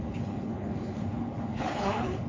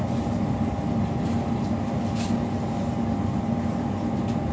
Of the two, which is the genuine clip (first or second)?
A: second